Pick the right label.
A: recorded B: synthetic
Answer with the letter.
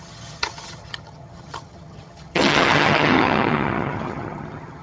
B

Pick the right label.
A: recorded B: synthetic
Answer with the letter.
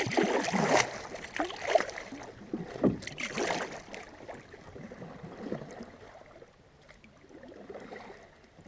A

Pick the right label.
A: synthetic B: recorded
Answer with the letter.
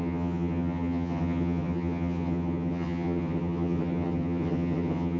A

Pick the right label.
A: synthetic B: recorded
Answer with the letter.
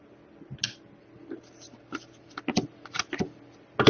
B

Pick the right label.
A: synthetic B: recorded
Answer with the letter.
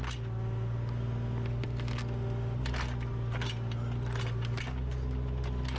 B